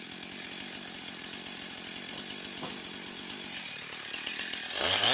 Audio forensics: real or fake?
real